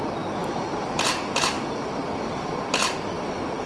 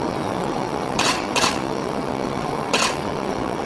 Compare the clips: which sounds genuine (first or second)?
first